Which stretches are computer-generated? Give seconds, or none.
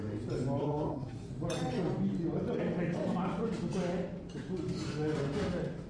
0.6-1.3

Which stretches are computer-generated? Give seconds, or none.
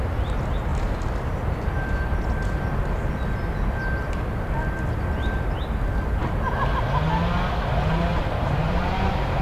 0.7-1.3; 8.1-9.4